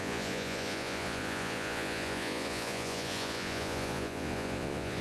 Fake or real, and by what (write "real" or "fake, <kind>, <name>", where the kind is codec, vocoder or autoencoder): fake, vocoder, Vocos